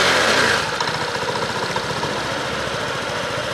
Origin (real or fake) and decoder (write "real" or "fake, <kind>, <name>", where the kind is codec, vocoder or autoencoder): real